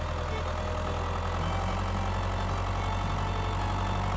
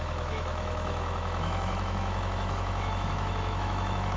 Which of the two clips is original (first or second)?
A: first